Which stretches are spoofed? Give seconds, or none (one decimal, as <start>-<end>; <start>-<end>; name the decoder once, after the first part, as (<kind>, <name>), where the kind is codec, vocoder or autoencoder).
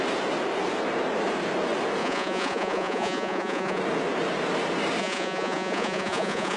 2.0-3.8 (vocoder, Vocos); 5.0-6.6